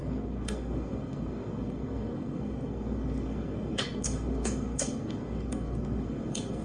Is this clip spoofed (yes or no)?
yes